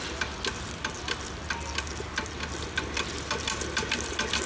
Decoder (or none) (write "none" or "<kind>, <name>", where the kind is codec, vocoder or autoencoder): none